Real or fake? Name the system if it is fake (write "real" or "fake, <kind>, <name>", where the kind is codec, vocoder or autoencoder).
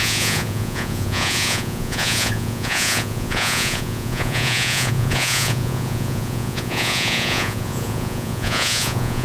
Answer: fake, vocoder, Vocos